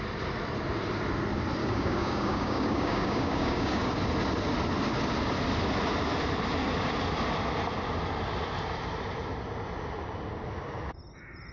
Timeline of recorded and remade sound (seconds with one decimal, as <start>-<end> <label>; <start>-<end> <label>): 0.0-1.6 recorded; 1.6-4.0 remade; 4.0-11.5 recorded